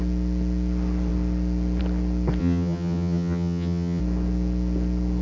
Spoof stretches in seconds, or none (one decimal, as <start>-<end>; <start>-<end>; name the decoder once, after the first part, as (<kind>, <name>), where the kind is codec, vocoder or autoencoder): 2.4-4.0 (vocoder, HiFi-GAN)